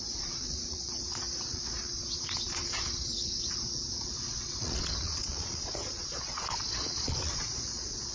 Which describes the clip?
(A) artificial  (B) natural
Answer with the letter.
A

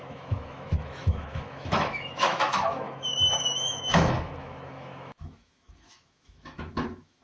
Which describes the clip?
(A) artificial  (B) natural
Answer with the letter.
A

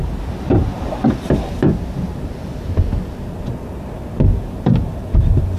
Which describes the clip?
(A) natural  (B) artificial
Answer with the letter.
A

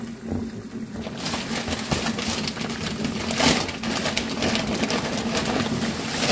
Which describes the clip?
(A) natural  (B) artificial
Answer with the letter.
A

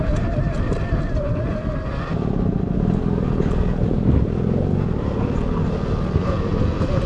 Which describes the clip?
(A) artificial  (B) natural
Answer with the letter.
B